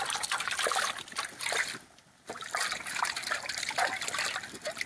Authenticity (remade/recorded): remade